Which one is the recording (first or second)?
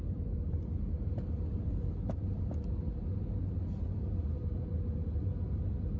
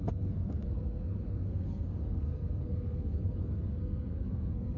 first